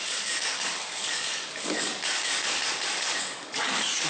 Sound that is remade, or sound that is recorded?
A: remade